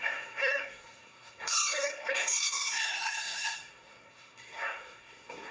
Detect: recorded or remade remade